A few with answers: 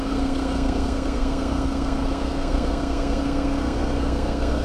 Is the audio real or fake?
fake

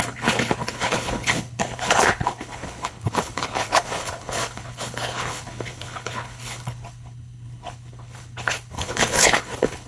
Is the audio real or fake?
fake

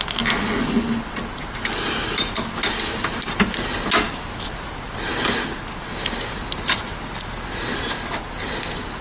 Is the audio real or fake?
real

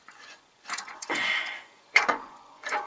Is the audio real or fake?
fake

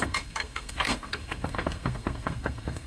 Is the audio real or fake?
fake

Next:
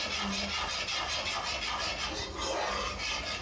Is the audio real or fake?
real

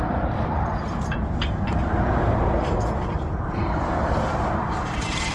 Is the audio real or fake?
fake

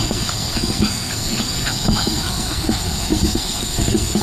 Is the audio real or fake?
fake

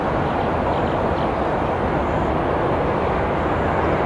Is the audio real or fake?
real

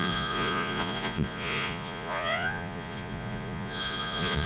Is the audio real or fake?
fake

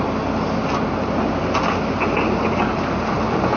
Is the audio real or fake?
real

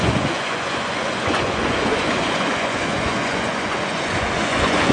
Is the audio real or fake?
fake